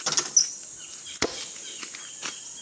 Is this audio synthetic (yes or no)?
no